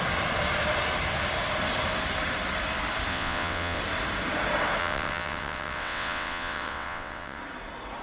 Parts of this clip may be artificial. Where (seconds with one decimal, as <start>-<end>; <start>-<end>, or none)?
3.1-3.8; 4.8-7.4